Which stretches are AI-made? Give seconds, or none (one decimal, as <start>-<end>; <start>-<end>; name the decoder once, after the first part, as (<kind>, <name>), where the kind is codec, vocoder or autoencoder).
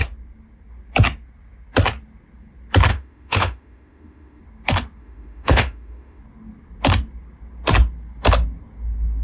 2.9-4.4 (autoencoder, DAC-VAE); 5.0-6.2